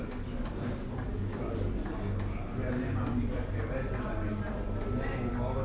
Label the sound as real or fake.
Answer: real